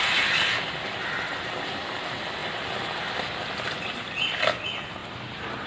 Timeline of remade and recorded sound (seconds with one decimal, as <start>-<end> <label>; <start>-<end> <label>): 0.0-2.4 recorded; 2.4-3.5 remade; 3.5-5.0 recorded; 5.0-5.7 remade